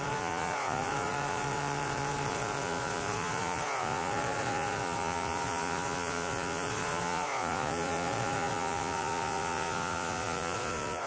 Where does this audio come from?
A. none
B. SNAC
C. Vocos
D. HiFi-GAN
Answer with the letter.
C